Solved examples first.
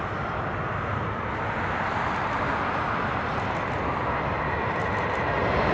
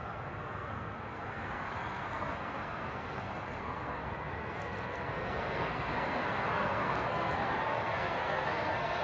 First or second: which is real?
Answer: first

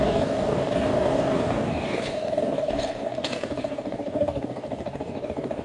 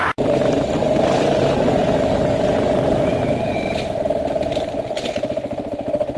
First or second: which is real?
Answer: second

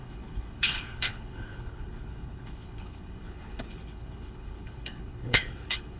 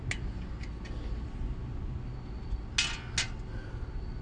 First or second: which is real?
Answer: second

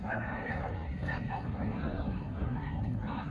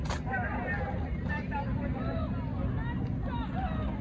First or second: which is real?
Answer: second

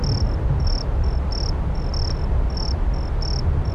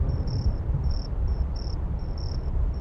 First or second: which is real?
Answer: first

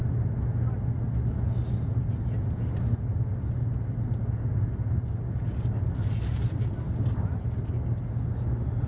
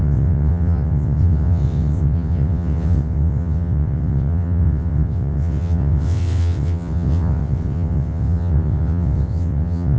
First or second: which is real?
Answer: first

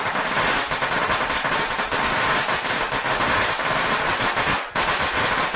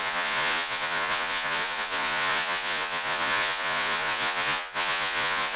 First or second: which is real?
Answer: first